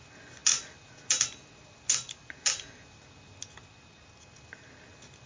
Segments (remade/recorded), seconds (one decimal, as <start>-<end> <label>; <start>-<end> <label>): 0.0-5.3 recorded